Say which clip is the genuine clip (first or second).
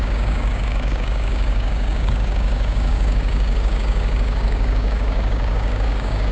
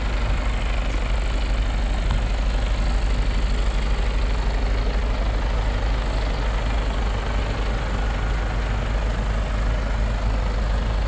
second